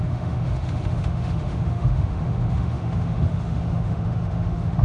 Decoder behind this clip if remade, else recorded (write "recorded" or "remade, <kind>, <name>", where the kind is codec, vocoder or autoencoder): remade, autoencoder, DAC-VAE